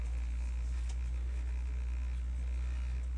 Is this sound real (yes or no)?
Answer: yes